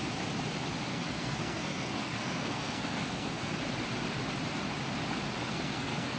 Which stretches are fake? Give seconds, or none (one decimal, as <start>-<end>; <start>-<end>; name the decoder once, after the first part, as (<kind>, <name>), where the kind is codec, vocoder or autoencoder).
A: 0.9-3.6 (codec, SNAC); 5.4-6.2